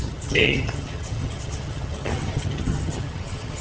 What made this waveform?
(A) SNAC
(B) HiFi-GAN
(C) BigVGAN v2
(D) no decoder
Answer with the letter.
B